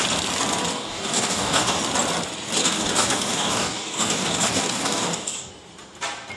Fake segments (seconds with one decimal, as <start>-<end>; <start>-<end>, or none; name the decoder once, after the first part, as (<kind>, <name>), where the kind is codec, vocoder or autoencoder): 0.7-1.8 (codec, DAC); 2.6-5.5